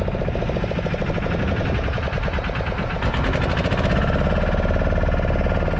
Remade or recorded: recorded